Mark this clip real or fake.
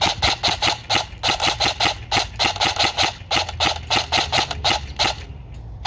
real